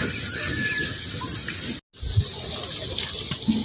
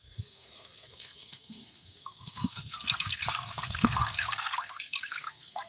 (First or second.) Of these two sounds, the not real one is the second